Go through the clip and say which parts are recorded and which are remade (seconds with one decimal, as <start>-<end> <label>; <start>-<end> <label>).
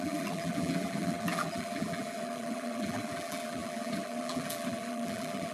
0.0-5.5 remade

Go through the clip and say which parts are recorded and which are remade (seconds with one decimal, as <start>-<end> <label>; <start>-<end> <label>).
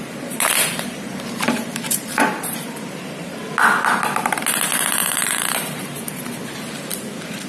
0.0-3.4 remade; 3.4-5.0 recorded; 5.0-6.3 remade; 6.3-7.5 recorded